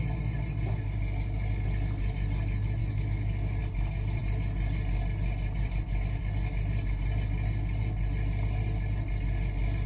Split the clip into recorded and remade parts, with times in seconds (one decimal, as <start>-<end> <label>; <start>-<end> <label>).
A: 0.0-2.8 recorded; 2.8-3.6 remade; 3.6-9.9 recorded